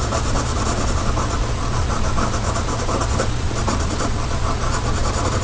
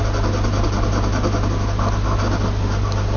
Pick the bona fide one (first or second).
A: second